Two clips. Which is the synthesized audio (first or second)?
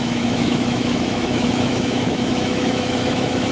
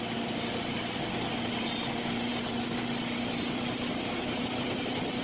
first